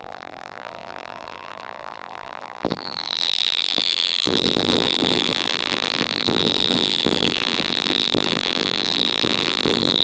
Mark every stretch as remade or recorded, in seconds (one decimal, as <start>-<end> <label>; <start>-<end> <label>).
0.0-10.0 remade